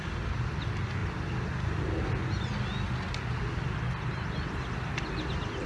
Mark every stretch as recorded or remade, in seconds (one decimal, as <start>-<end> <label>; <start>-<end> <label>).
0.0-5.7 recorded